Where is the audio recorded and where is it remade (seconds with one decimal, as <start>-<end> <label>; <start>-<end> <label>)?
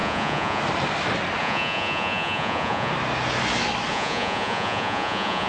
0.0-0.6 remade; 0.6-1.4 recorded; 1.4-2.9 remade; 2.9-3.9 recorded; 3.9-5.5 remade